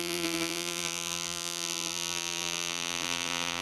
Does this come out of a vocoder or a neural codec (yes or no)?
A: yes